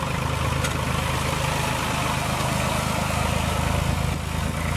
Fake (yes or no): no